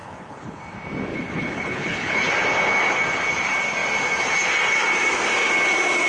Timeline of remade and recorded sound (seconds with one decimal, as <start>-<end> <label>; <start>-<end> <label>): 0.0-0.6 remade; 0.6-1.1 recorded; 1.1-2.3 remade; 2.3-6.1 recorded